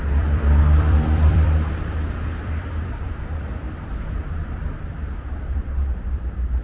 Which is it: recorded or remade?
remade